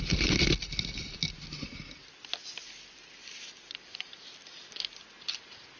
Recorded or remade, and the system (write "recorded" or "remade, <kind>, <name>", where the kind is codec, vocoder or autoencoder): recorded